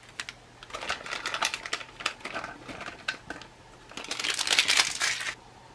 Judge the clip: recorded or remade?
recorded